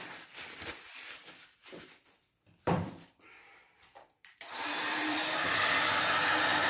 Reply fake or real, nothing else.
fake